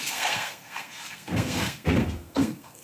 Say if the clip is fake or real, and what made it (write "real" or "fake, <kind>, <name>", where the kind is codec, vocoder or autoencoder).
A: fake, codec, SNAC